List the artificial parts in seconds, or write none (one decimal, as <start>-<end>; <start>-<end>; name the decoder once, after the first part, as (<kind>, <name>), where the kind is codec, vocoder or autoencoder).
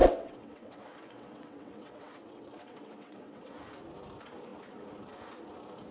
0.0-3.5 (vocoder, WaveNeXt)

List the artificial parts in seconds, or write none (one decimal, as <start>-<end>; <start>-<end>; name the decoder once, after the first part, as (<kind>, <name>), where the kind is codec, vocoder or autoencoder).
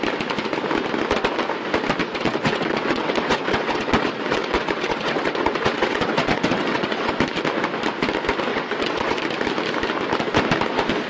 2.0-7.1 (vocoder, WaveNeXt); 8.5-9.2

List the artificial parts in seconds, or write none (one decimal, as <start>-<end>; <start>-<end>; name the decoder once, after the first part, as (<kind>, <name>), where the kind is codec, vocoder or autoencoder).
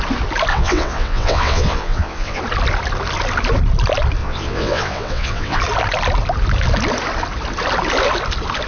0.5-2.4 (vocoder, WaveNeXt); 4.2-5.6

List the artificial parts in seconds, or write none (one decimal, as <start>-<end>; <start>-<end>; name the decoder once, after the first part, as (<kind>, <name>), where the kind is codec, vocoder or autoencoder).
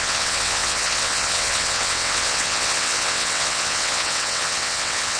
0.0-5.2 (vocoder, WaveNeXt)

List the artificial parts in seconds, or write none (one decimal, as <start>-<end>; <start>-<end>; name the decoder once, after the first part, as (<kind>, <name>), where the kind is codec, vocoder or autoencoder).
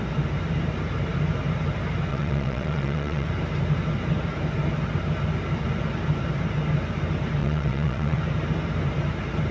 2.1-3.3 (vocoder, WaveNeXt); 7.4-8.2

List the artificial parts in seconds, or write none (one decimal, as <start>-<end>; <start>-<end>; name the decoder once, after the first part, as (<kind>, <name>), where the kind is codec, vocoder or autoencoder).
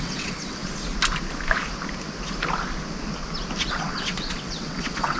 0.0-0.6 (vocoder, WaveNeXt); 3.7-5.2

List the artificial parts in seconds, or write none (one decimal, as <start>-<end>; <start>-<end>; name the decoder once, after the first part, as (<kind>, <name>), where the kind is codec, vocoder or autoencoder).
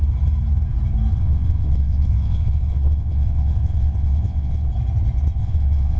1.1-4.7 (vocoder, WaveNeXt); 5.4-6.0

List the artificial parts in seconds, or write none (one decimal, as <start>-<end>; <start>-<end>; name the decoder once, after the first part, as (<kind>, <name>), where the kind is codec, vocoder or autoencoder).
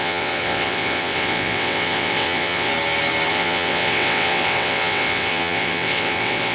0.0-2.7 (vocoder, WaveNeXt); 3.3-6.5